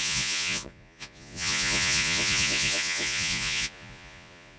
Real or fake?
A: fake